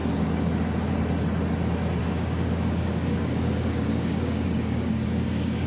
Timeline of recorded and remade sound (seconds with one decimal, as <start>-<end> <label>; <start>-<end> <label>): 0.0-2.0 recorded; 2.0-5.7 remade